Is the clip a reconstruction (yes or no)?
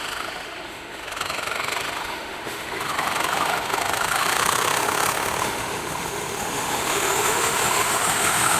yes